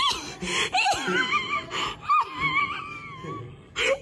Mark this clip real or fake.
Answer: real